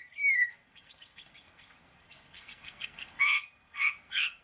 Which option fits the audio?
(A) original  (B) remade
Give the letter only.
B